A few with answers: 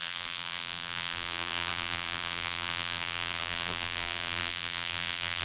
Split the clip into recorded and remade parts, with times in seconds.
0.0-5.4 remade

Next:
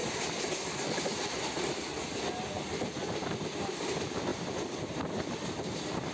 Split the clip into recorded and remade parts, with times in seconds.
0.0-6.1 recorded

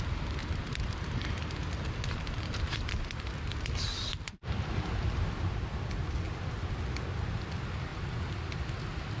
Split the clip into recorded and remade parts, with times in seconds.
0.0-0.4 recorded; 0.4-4.4 remade; 4.4-9.2 recorded

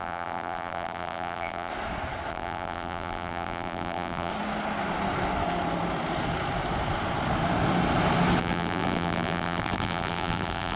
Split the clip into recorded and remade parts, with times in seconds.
0.0-1.7 remade; 1.7-2.3 recorded; 2.3-4.3 remade; 4.3-8.4 recorded; 8.4-10.8 remade

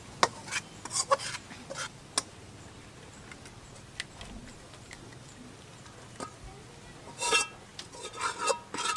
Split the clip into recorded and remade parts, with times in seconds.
0.0-4.4 recorded; 4.4-5.1 remade; 5.1-7.7 recorded; 7.7-8.4 remade; 8.4-9.0 recorded

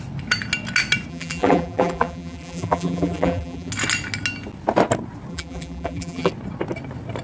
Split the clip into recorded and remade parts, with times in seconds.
0.0-1.1 recorded; 1.1-3.7 remade; 3.7-5.3 recorded; 5.3-6.3 remade; 6.3-7.2 recorded

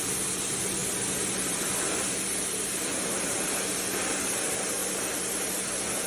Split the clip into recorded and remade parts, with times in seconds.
0.0-6.1 recorded